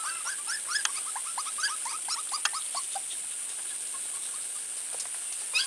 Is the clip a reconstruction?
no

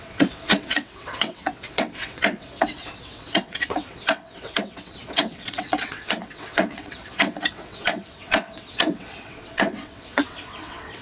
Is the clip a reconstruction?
yes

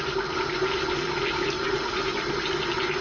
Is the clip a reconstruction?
no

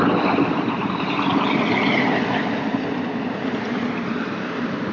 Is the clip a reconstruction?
no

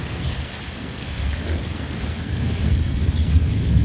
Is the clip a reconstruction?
yes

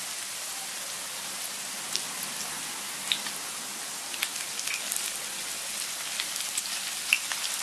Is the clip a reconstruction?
no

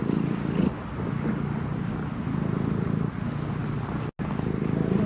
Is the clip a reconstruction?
no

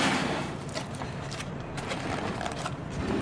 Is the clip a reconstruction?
yes